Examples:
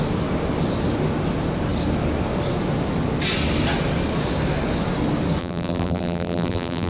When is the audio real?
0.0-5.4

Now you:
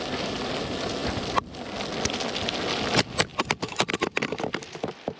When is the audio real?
0.0-5.2